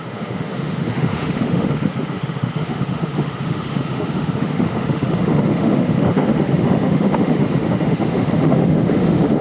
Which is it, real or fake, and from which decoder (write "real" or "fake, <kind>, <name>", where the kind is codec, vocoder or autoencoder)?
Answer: fake, autoencoder, DAC-VAE